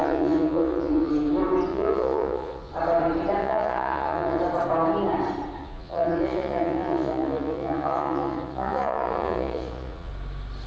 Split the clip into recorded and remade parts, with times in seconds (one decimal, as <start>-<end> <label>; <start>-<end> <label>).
0.0-1.1 remade; 1.1-1.7 recorded; 1.7-2.7 remade; 2.7-3.4 recorded; 3.4-4.4 remade; 4.4-5.6 recorded; 5.6-10.1 remade; 10.1-10.7 recorded